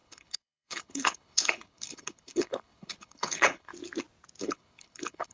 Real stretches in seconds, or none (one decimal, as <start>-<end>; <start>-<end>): 3.7-4.4